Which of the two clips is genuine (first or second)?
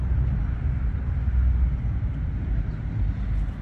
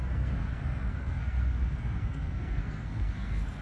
first